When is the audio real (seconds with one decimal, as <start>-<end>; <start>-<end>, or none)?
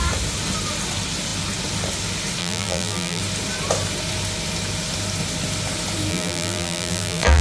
0.0-2.4; 3.2-6.1